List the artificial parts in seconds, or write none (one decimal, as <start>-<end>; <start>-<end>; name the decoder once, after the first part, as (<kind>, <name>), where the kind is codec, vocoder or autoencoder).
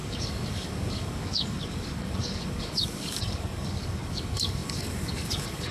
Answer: 0.0-5.7 (codec, DAC)